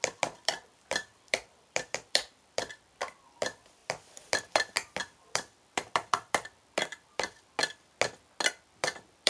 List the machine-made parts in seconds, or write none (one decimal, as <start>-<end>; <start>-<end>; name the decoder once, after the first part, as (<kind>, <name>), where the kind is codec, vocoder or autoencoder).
0.0-7.6 (vocoder, BigVGAN v2); 8.5-9.3